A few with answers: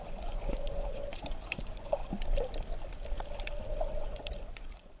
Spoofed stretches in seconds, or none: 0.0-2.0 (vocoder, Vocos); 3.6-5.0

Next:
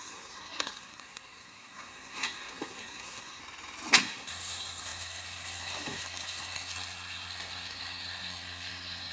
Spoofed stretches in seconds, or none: 0.0-3.4 (codec, SNAC); 4.0-9.1

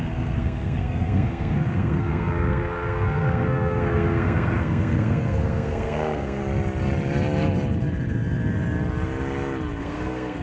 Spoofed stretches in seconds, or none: 0.0-6.4 (codec, SNAC); 9.8-10.4

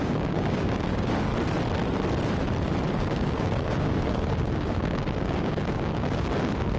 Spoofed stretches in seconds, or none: 0.0-1.3 (codec, DAC); 2.9-6.8

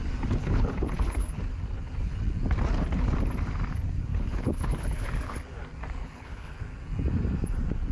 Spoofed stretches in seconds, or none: 0.4-1.4 (codec, HILCodec); 4.1-5.4; 6.0-6.6

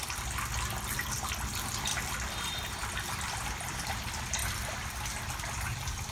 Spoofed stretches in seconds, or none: 1.9-3.7 (vocoder, BigVGAN v2); 4.4-6.1

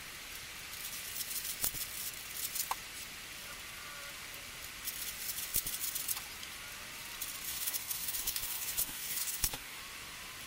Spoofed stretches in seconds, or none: 7.5-9.8 (codec, DAC)

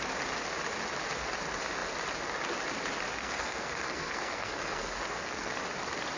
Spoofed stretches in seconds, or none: 3.2-5.5 (codec, SNAC)